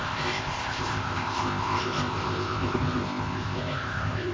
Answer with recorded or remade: remade